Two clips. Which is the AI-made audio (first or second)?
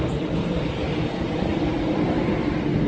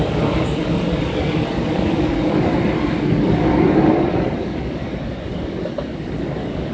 second